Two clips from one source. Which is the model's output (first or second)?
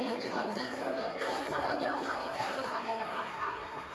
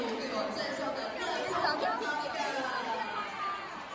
first